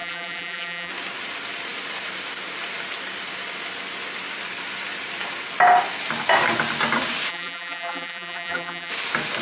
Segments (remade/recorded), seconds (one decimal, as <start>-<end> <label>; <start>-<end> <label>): 0.0-0.9 remade; 0.9-7.3 recorded; 7.3-8.9 remade; 8.9-9.4 recorded